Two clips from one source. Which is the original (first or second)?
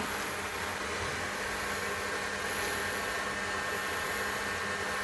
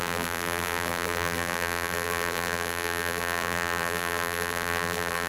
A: first